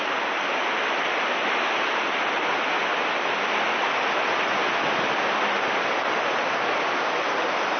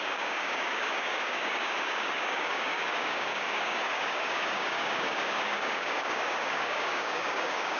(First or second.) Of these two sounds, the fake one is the second